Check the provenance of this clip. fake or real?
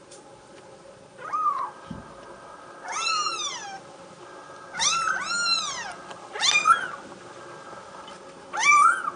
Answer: real